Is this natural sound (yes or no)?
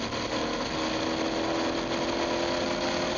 yes